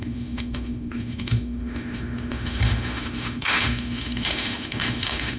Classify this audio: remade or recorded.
remade